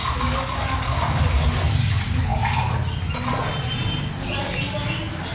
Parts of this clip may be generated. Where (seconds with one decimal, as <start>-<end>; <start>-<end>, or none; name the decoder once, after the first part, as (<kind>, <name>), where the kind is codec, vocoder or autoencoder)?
0.0-1.2 (codec, DAC)